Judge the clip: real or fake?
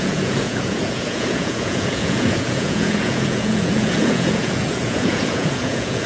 fake